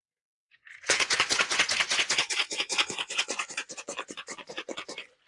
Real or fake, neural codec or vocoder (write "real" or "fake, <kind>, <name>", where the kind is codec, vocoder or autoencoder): fake, vocoder, Vocos